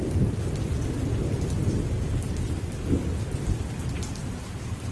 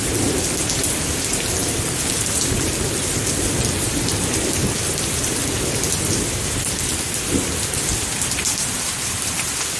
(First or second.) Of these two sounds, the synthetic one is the second